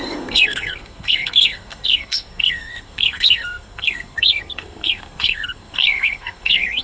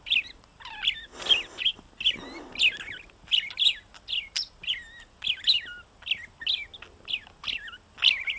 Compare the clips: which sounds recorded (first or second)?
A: second